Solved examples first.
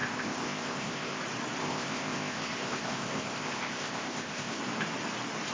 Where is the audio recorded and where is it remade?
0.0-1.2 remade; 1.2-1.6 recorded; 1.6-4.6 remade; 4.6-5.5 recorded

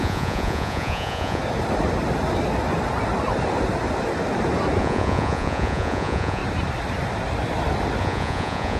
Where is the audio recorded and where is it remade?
0.0-1.4 remade; 1.4-4.8 recorded; 4.8-6.4 remade; 6.4-8.0 recorded; 8.0-8.8 remade

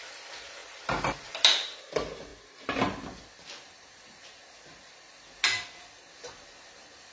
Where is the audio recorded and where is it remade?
0.0-7.1 recorded

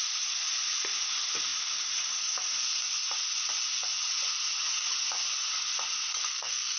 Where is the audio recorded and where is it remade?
0.0-6.2 recorded; 6.2-6.8 remade

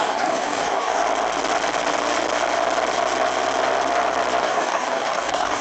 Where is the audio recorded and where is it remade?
0.0-1.0 remade; 1.0-4.4 recorded; 4.4-5.6 remade

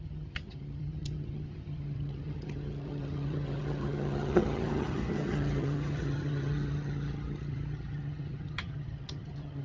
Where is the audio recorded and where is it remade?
0.0-9.6 remade